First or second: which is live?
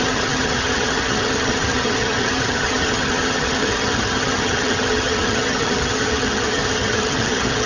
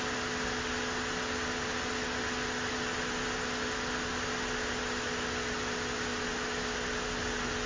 second